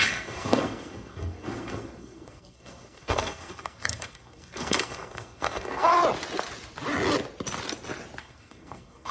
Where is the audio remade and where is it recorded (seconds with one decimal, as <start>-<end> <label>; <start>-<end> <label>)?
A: 0.0-5.9 remade; 5.9-8.2 recorded; 8.2-9.1 remade